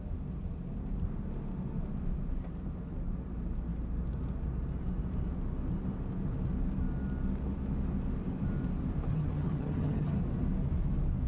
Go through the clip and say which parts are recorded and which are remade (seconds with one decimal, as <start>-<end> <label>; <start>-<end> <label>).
0.0-9.1 recorded; 9.1-10.2 remade; 10.2-11.3 recorded